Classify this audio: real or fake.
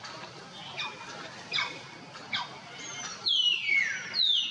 real